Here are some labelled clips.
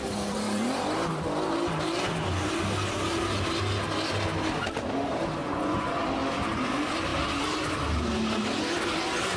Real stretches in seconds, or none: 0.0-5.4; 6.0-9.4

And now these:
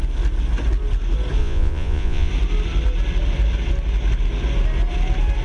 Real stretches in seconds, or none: 0.0-1.4; 2.3-5.4

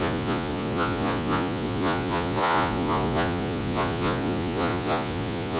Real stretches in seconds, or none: none

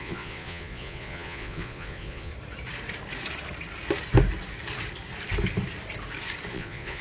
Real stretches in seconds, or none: 2.3-6.5

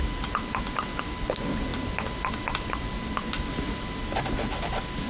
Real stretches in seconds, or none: 0.0-5.1

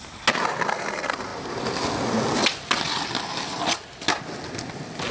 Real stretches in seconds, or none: 0.0-5.1

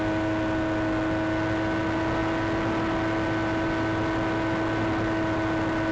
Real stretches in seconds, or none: 0.0-5.9

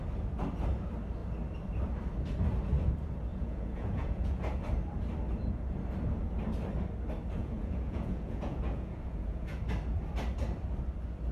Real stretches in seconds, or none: 0.0-3.3; 4.4-7.4; 9.6-11.3